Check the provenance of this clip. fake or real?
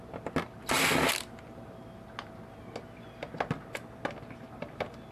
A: real